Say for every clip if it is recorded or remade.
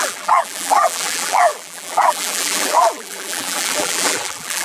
remade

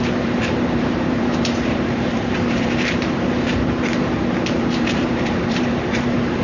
remade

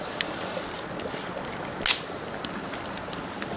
recorded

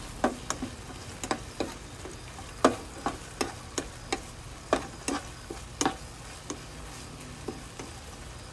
recorded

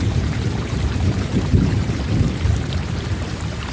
remade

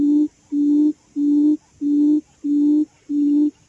recorded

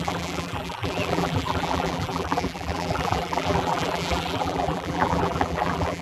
remade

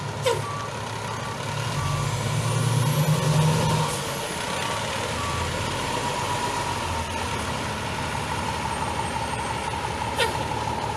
recorded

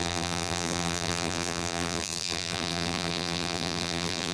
remade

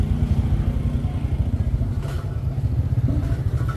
recorded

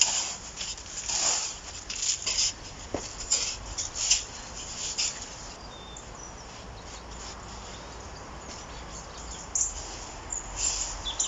recorded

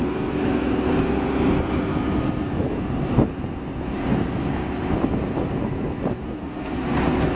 recorded